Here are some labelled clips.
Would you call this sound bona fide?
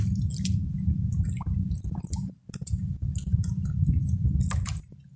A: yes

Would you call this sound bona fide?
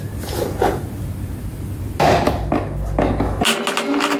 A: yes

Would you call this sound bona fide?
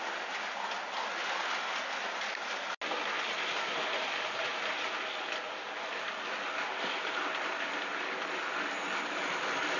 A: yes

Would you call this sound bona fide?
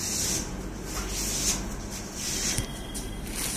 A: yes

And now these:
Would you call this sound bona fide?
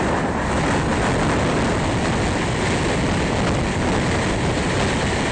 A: yes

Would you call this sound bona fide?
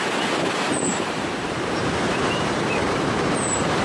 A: no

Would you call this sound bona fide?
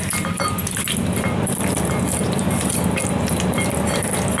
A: yes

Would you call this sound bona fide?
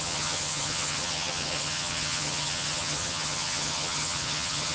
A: no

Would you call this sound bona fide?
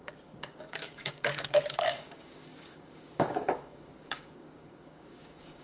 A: no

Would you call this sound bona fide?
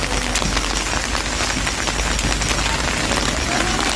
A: yes